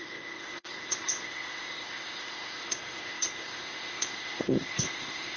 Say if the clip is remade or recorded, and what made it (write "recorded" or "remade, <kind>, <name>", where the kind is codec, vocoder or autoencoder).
remade, codec, ZipCodec